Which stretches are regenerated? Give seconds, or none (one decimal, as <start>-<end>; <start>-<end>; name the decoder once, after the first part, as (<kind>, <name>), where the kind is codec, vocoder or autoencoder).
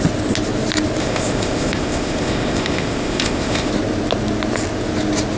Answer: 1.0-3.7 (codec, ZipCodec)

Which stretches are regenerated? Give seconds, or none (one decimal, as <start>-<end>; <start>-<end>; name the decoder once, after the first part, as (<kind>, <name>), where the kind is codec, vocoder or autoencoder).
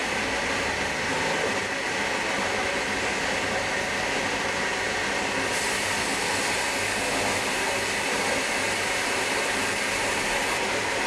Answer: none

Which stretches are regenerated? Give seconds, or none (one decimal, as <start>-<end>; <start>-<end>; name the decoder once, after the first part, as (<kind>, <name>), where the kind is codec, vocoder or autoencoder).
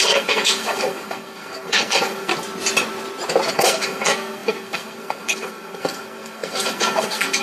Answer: 0.0-2.3 (codec, SNAC); 3.5-7.4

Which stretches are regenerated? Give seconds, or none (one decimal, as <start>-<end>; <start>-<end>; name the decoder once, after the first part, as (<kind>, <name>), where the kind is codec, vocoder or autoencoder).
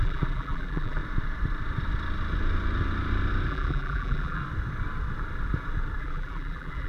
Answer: 0.0-1.0 (vocoder, BigVGAN v2); 3.5-4.4; 6.0-6.9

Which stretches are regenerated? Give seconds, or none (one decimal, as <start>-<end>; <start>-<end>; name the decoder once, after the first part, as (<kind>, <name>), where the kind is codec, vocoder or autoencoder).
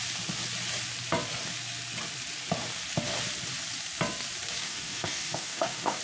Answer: 4.6-6.0 (codec, DAC)